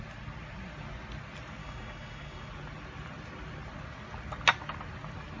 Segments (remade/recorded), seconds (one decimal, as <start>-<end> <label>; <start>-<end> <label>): 0.0-1.6 recorded; 1.6-2.5 remade; 2.5-5.4 recorded